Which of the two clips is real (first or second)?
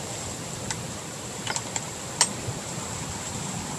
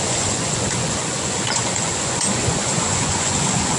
first